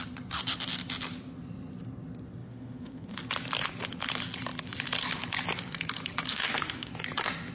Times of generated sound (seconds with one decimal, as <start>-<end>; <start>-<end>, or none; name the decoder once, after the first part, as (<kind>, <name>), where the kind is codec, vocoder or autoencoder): 2.4-3.2 (autoencoder, DAC-VAE); 6.3-6.9